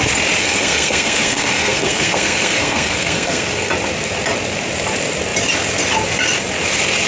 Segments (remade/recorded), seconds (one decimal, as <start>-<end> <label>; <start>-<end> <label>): 0.0-0.4 recorded; 0.4-3.7 remade; 3.7-7.1 recorded